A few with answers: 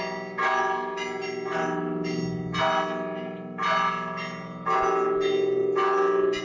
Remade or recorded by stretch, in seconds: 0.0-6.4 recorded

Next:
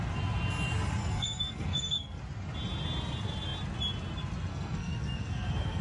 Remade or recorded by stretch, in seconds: 0.0-1.0 recorded; 1.0-2.2 remade; 2.2-4.5 recorded; 4.5-5.8 remade

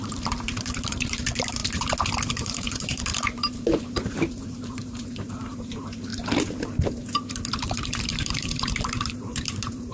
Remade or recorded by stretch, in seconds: 0.0-1.6 remade; 1.6-2.3 recorded; 2.3-6.1 remade; 6.1-7.5 recorded; 7.5-9.9 remade

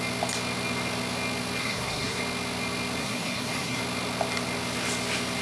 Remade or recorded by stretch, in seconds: 0.0-1.6 recorded; 1.6-2.2 remade; 2.2-3.0 recorded; 3.0-3.8 remade; 3.8-5.4 recorded

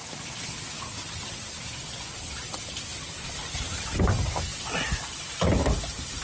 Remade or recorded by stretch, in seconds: 0.0-6.2 recorded

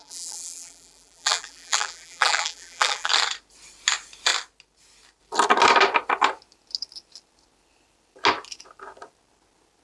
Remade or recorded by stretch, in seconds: 0.0-3.1 remade; 3.1-9.8 recorded

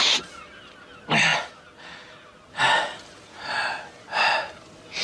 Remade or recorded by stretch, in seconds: 0.0-5.0 recorded

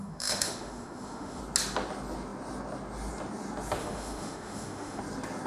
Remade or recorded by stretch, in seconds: 0.0-1.4 remade; 1.4-3.8 recorded; 3.8-5.0 remade; 5.0-5.5 recorded